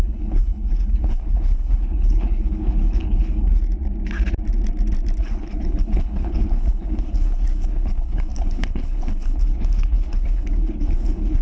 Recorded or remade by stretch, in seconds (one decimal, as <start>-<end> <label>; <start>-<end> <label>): 0.0-3.6 remade; 3.6-5.2 recorded; 5.2-11.4 remade